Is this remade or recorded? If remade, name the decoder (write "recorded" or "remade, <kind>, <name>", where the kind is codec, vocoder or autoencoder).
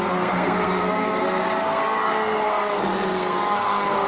remade, codec, SNAC